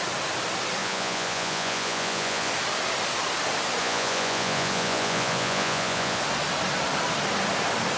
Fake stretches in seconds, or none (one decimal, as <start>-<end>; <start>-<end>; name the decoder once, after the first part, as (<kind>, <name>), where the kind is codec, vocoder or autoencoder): 0.8-2.5 (vocoder, Vocos); 3.8-6.2